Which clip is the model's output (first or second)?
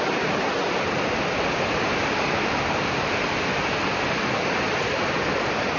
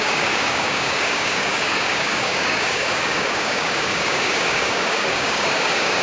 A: second